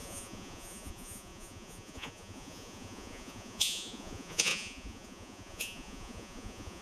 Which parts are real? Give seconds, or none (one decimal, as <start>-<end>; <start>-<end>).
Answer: none